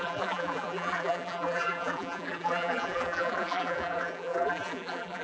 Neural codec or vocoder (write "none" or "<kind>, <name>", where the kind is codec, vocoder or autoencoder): vocoder, BigVGAN v2